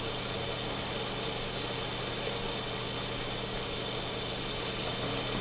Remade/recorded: recorded